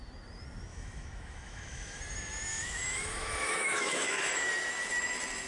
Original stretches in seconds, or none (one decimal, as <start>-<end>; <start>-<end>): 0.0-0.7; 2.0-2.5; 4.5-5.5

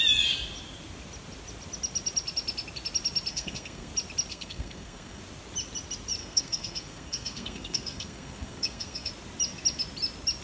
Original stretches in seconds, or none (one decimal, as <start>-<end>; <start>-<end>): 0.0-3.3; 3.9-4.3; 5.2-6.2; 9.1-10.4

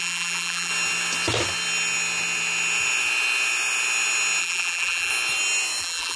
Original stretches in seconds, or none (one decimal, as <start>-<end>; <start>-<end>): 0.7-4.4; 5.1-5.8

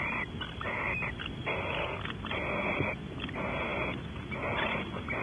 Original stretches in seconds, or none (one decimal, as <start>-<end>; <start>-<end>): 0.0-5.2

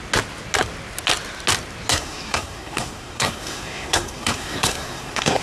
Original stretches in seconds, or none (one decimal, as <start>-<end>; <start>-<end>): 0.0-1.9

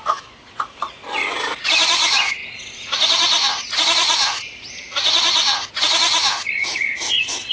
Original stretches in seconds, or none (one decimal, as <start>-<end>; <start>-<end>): none

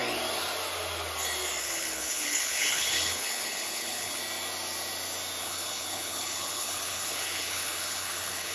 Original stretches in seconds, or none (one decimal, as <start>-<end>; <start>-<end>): 0.0-1.6; 4.2-5.4

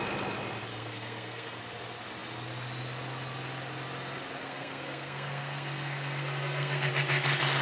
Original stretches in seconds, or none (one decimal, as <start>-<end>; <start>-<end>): 0.0-0.7; 1.6-4.4; 6.9-7.6